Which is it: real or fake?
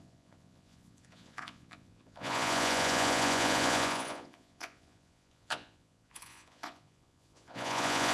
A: fake